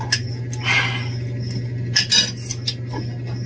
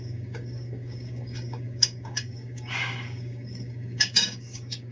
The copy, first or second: second